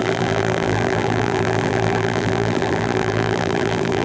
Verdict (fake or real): fake